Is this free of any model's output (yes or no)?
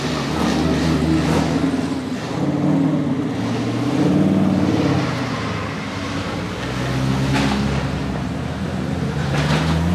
yes